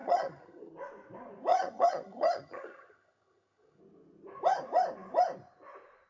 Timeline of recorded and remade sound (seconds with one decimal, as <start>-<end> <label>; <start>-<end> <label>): 0.0-0.7 remade; 0.7-1.5 recorded; 1.5-3.8 remade; 3.8-6.1 recorded